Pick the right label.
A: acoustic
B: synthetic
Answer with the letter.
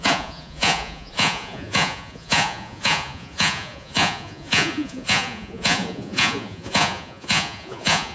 B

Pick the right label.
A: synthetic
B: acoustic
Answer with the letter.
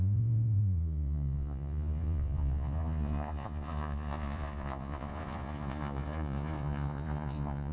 A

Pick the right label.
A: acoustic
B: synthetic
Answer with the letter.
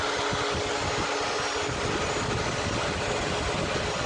A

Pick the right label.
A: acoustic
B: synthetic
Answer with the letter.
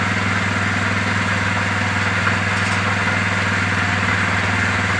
A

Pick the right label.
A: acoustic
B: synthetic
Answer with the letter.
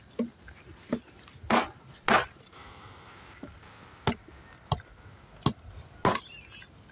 A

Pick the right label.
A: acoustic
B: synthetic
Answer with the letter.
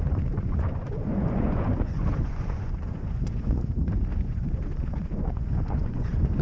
B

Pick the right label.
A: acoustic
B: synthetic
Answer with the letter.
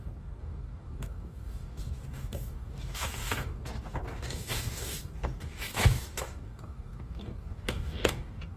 B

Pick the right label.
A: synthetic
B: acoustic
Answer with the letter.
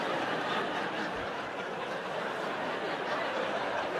B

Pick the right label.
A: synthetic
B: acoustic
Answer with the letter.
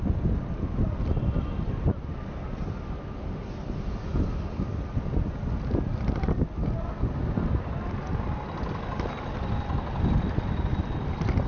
B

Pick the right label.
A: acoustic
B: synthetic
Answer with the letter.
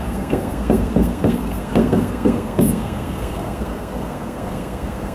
B